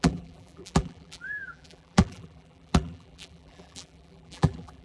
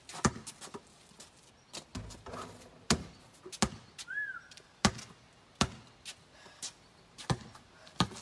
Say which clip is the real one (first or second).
second